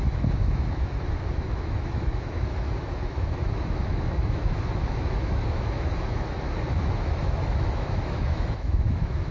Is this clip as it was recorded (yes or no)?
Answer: no